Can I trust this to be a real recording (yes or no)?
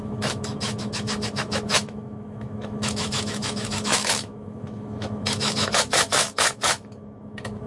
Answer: no